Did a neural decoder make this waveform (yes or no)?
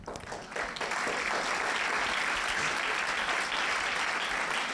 no